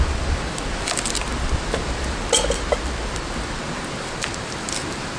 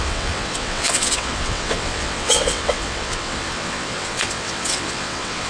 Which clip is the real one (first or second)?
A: first